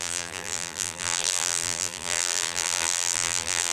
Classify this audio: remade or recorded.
remade